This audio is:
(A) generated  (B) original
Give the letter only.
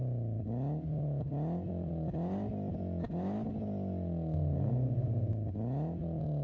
B